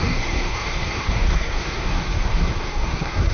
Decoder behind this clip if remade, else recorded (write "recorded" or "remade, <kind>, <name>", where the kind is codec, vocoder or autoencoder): remade, codec, SNAC